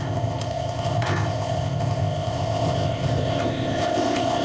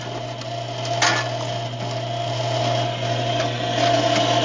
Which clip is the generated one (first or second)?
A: first